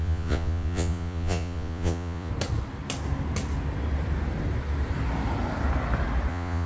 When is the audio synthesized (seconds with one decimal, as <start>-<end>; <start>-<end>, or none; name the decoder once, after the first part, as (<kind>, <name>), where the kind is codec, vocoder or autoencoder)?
0.0-2.3 (vocoder, Vocos); 6.3-6.7